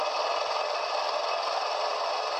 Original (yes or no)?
yes